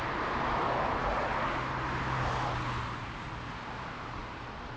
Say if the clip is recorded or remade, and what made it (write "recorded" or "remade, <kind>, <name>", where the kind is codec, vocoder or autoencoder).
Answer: recorded